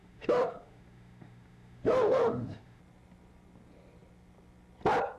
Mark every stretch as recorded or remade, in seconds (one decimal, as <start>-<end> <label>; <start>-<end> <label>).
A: 0.0-2.8 remade; 2.8-5.2 recorded